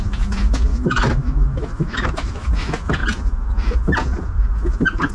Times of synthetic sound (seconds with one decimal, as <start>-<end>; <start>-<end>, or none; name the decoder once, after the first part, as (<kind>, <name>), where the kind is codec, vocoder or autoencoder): 0.7-2.5 (autoencoder, DAC-VAE)